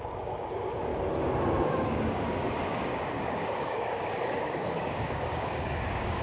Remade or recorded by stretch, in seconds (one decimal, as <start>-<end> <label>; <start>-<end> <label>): 0.0-0.9 remade; 0.9-1.6 recorded; 1.6-6.2 remade